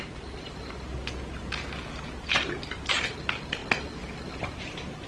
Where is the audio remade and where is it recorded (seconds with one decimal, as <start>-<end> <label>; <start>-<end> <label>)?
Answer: 0.0-3.6 remade; 3.6-4.6 recorded; 4.6-5.1 remade